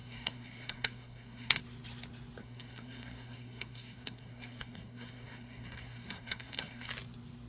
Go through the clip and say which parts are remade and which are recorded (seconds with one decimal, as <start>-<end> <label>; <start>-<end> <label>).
0.0-1.6 remade; 1.6-2.4 recorded; 2.4-6.9 remade; 6.9-7.5 recorded

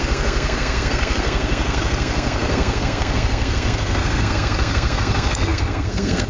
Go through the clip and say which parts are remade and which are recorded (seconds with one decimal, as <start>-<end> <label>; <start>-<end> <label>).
0.0-6.3 remade

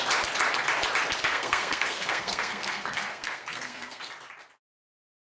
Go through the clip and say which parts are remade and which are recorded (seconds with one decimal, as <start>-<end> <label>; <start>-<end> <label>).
0.0-1.2 recorded; 1.2-4.1 remade; 4.1-5.3 recorded

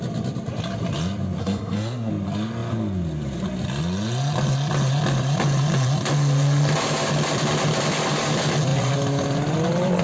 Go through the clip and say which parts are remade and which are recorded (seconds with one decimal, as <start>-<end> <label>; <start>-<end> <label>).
0.0-1.4 recorded; 1.4-2.1 remade; 2.1-10.0 recorded

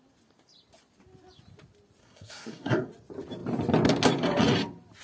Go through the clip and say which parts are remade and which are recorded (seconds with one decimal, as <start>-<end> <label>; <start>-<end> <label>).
0.0-2.0 recorded; 2.0-2.9 remade; 2.9-5.0 recorded

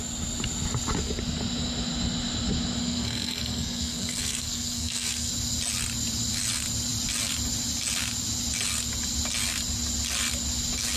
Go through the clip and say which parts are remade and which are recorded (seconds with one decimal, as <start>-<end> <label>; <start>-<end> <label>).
0.0-2.8 recorded; 2.8-5.3 remade; 5.3-11.0 recorded